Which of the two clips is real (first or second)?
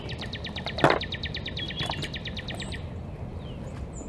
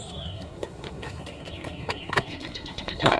first